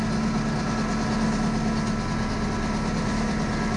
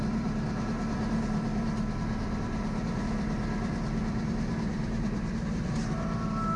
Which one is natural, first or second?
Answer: first